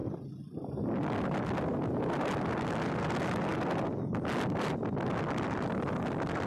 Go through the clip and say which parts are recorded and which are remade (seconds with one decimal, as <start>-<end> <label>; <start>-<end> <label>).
0.0-6.5 recorded